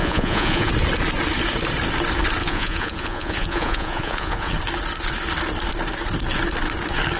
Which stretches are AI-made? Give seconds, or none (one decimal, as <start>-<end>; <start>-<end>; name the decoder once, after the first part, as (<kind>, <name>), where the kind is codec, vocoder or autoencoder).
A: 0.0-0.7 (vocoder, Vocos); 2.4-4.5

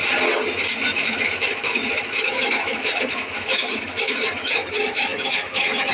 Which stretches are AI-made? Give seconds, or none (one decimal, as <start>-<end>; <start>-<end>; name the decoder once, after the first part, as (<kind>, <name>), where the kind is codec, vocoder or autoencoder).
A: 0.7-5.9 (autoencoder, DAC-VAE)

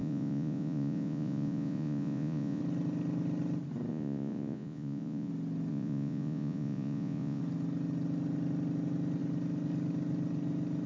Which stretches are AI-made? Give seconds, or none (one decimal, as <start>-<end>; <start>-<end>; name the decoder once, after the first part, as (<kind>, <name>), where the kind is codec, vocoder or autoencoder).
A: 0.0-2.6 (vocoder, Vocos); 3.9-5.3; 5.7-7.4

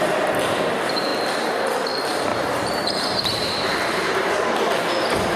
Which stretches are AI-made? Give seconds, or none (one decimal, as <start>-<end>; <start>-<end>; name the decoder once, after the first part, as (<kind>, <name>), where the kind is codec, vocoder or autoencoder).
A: 2.3-4.3 (vocoder, BigVGAN v2)

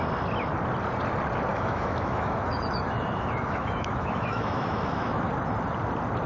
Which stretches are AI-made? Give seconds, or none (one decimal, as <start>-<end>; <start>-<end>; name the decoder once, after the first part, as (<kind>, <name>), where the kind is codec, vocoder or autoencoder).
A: 1.5-5.3 (autoencoder, DAC-VAE)

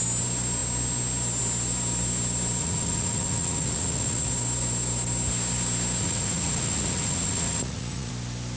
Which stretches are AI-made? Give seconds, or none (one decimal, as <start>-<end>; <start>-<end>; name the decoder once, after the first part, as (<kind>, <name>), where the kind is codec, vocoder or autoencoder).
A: 2.6-4.3 (vocoder, Vocos); 6.0-8.1